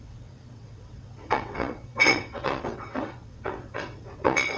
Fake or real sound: fake